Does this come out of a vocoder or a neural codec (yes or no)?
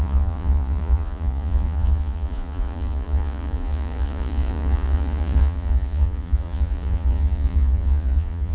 yes